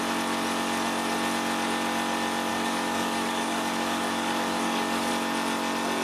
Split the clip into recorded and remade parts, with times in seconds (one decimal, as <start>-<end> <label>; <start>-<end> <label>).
0.0-2.5 recorded; 2.5-5.1 remade; 5.1-6.0 recorded